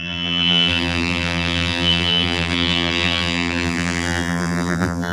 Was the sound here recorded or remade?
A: remade